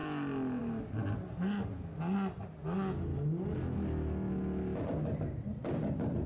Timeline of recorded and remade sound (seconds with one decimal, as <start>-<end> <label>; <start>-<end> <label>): 0.0-6.3 recorded